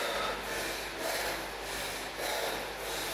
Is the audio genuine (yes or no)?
yes